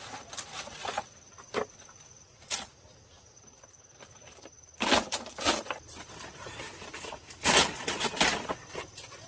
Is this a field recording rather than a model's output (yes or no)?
yes